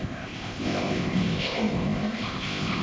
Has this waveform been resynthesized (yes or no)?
yes